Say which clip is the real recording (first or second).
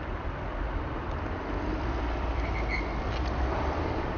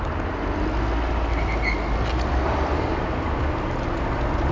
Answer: second